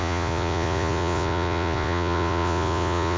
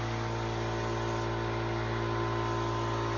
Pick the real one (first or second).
second